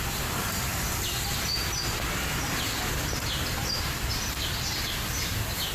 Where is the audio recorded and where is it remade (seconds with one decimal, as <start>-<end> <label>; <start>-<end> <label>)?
0.0-0.7 remade; 0.7-3.6 recorded; 3.6-5.7 remade